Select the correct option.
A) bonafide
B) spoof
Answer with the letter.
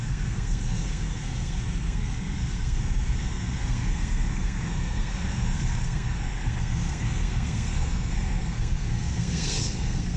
B